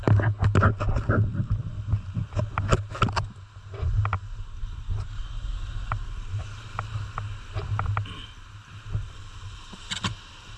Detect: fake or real real